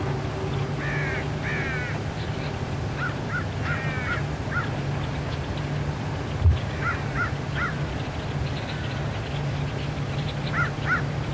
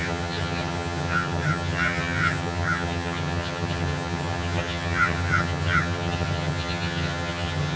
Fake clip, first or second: second